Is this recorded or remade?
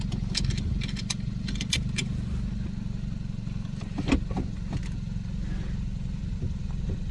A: recorded